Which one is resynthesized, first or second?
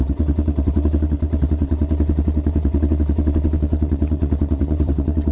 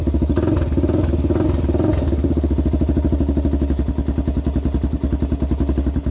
first